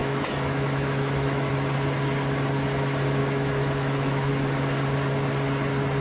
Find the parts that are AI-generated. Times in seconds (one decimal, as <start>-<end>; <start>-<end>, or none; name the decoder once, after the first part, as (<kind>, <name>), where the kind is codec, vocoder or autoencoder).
0.0-1.5 (autoencoder, DAC-VAE); 3.2-4.3